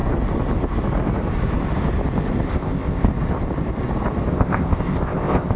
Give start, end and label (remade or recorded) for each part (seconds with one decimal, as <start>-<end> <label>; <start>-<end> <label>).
0.0-2.5 recorded; 2.5-3.1 remade; 3.1-4.3 recorded; 4.3-5.6 remade